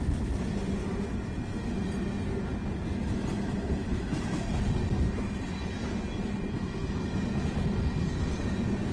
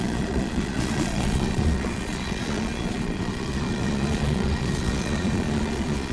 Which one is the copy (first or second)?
second